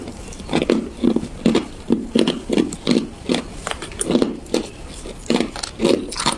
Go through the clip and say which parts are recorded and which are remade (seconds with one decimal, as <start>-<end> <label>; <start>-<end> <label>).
0.0-6.4 recorded